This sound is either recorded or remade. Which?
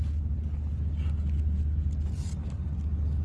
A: recorded